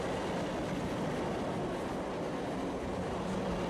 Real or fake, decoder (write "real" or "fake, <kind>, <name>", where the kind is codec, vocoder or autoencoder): real